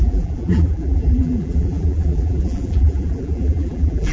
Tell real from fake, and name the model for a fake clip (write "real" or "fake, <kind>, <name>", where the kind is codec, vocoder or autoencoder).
fake, vocoder, BigVGAN v2